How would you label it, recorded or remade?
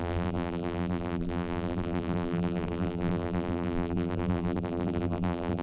remade